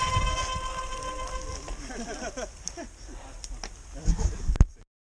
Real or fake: real